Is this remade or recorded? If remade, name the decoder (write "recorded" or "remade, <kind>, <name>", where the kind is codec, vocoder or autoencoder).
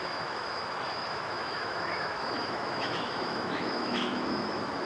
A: remade, autoencoder, DAC-VAE